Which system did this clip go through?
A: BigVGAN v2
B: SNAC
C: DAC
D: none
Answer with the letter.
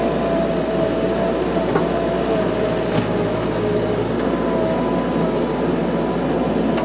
D